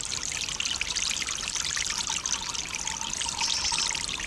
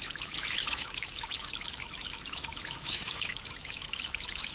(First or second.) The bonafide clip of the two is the first